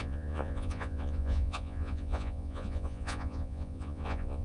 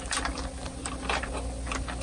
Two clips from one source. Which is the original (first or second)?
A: second